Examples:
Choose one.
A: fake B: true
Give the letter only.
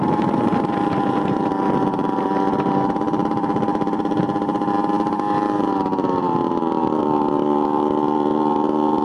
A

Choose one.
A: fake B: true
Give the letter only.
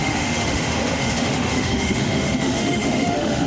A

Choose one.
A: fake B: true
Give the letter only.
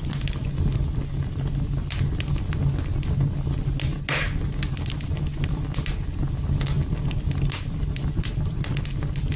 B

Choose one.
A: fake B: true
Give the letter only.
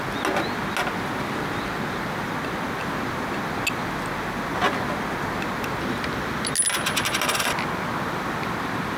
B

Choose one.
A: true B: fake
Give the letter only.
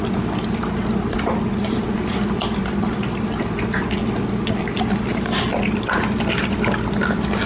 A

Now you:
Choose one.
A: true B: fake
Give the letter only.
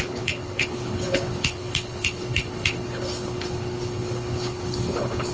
B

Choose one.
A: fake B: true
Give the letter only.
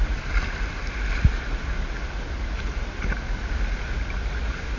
B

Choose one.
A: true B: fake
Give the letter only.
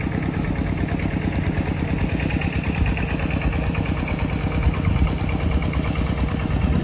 A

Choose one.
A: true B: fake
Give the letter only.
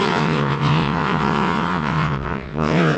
B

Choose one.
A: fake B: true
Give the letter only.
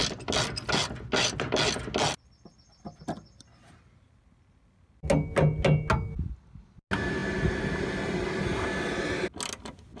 B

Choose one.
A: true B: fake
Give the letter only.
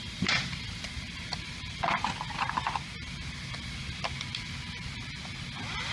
A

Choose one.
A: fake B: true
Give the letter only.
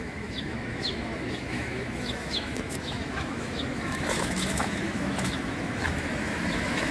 A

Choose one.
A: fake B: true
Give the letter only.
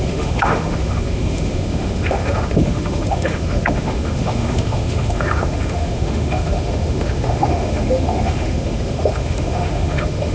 A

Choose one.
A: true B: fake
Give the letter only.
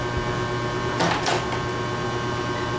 A